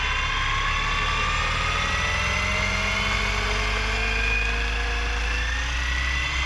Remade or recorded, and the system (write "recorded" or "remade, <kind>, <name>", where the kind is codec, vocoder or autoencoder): recorded